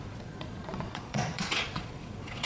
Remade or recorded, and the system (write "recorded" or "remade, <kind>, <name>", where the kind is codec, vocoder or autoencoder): remade, vocoder, Vocos